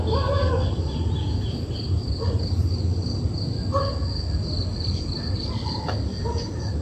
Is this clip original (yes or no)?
yes